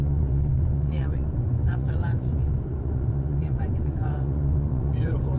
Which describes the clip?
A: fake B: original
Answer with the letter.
A